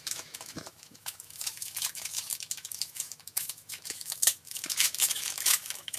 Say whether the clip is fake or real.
fake